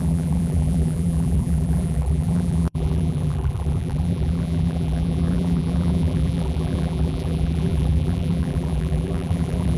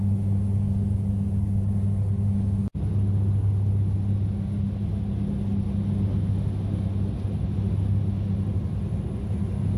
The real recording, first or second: second